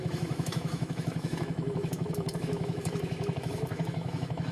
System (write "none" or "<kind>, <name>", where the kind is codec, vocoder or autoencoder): autoencoder, DAC-VAE